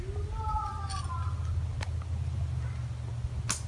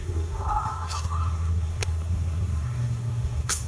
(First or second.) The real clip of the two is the first